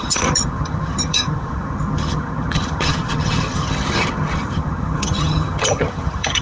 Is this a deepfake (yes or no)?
yes